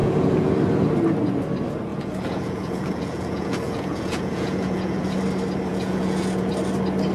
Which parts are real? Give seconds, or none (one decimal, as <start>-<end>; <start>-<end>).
0.5-1.9; 5.2-5.7; 6.5-7.1